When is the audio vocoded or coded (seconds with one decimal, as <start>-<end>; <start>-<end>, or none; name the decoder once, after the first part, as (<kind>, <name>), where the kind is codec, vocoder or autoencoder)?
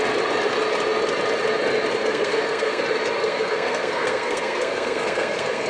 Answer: 2.0-2.8 (codec, SNAC); 3.2-5.7